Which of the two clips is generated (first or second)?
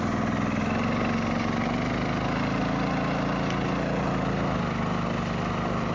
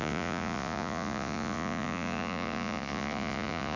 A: second